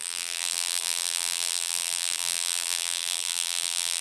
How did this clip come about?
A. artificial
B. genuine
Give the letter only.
A